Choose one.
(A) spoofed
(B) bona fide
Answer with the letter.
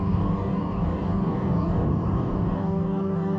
A